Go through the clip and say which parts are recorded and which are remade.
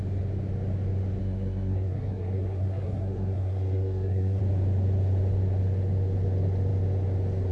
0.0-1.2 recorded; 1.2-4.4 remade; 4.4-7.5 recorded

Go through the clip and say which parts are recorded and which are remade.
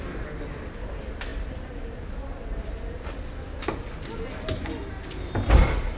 0.0-6.0 recorded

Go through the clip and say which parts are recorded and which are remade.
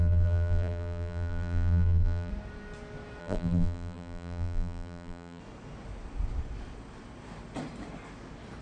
0.0-2.3 remade; 2.3-3.2 recorded; 3.2-5.4 remade; 5.4-8.6 recorded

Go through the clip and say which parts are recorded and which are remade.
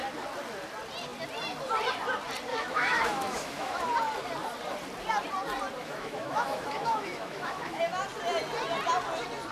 0.0-2.5 recorded; 2.5-3.8 remade; 3.8-5.8 recorded; 5.8-7.8 remade; 7.8-9.5 recorded